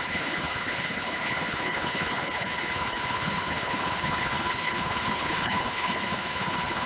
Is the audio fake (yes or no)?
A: yes